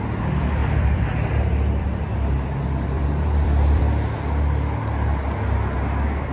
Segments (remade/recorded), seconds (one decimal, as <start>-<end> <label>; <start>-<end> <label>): 0.0-0.6 recorded; 0.6-3.8 remade; 3.8-6.3 recorded